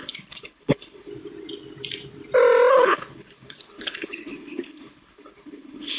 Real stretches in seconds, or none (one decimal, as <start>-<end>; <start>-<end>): 1.1-2.7